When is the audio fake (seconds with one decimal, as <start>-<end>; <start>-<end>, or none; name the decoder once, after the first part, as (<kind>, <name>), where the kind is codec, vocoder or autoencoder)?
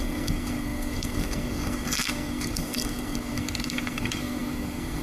0.0-5.0 (codec, SNAC)